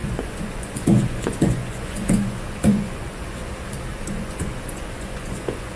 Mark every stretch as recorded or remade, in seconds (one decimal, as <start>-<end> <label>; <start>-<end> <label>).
0.0-3.5 remade; 3.5-3.9 recorded; 3.9-5.8 remade